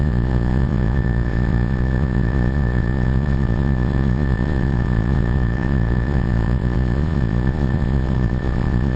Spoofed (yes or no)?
yes